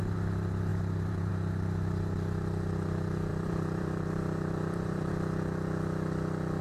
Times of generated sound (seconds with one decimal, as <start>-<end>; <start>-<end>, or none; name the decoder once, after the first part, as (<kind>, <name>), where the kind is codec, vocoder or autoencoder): 0.7-1.3 (vocoder, BigVGAN v2); 3.3-5.1